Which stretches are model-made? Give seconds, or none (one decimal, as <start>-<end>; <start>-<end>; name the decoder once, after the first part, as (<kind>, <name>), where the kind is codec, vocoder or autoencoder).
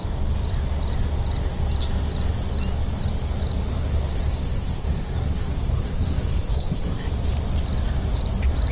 3.7-7.1 (codec, SNAC)